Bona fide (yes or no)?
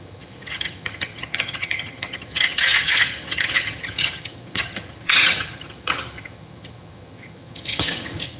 no